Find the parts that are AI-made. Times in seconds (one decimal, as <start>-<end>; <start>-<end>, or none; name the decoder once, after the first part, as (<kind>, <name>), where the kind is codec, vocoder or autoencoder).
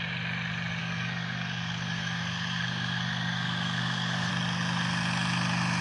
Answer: 0.8-4.3 (codec, SNAC)